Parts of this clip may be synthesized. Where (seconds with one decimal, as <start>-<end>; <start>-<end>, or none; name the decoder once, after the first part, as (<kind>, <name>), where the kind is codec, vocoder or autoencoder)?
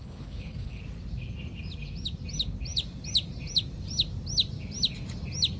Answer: 0.0-0.8 (codec, HILCodec)